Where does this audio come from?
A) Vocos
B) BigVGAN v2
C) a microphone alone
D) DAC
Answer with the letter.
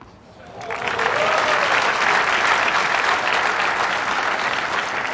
C